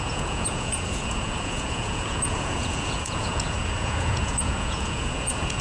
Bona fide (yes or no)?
no